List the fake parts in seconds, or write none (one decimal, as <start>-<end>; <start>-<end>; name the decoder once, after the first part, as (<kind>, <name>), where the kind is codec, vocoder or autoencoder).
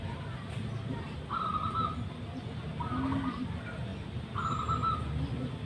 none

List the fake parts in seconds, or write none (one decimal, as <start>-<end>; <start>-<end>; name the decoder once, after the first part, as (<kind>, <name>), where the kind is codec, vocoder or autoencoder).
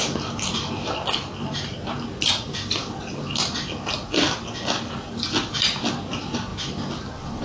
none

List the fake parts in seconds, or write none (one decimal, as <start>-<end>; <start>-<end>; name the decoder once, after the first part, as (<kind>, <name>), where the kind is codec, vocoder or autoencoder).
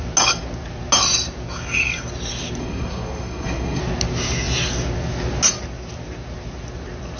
2.6-3.8 (codec, SNAC)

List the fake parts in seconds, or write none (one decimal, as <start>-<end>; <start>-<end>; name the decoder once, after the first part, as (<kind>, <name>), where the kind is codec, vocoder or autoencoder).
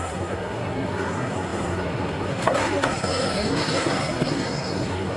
0.0-5.2 (codec, SNAC)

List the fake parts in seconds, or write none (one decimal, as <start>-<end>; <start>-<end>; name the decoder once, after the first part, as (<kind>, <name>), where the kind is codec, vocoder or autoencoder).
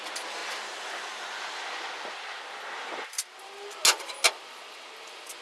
none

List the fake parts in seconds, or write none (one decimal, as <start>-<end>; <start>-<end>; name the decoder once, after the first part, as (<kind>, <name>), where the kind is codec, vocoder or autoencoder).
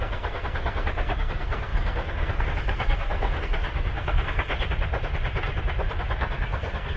0.0-4.5 (codec, SNAC); 6.2-7.0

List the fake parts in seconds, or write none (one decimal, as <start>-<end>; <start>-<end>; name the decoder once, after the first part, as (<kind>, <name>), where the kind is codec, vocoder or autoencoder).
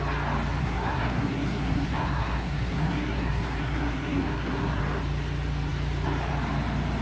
0.6-4.8 (codec, SNAC)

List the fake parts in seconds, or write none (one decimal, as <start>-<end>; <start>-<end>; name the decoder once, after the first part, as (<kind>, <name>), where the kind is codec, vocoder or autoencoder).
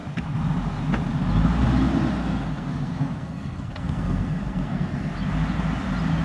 2.2-5.1 (codec, SNAC)